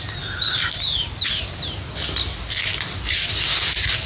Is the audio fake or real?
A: real